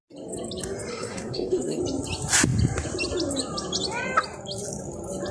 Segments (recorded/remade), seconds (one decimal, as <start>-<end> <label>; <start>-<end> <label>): 0.0-0.9 recorded; 0.9-1.8 remade; 1.8-5.3 recorded